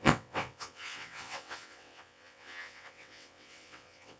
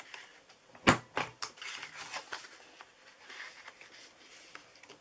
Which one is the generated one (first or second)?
first